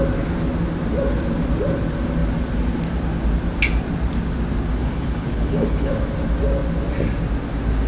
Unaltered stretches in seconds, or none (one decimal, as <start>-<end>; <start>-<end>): 0.0-4.8; 5.9-7.9